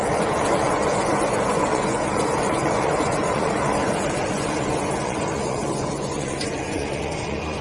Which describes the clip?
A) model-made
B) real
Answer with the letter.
A